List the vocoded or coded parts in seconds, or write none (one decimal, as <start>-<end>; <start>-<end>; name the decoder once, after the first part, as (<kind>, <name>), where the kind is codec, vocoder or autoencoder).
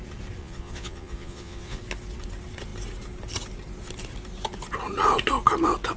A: 0.4-1.8 (vocoder, Vocos)